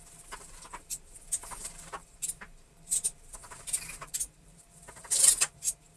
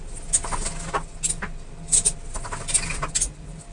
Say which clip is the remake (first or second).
first